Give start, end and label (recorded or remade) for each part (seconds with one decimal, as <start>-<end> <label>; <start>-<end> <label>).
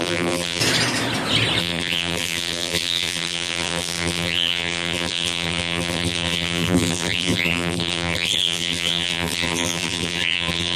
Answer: 0.0-0.6 remade; 0.6-1.6 recorded; 1.6-10.8 remade